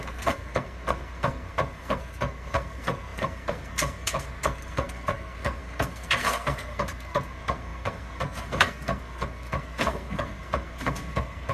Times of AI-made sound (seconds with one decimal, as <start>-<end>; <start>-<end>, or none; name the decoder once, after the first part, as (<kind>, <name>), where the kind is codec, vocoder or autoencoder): 0.0-11.5 (codec, SNAC)